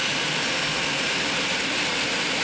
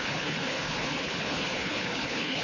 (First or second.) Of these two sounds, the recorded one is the first